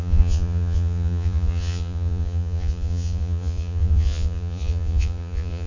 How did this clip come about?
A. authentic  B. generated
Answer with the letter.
B